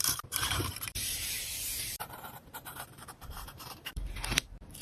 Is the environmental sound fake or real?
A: fake